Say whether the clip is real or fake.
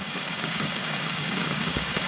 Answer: fake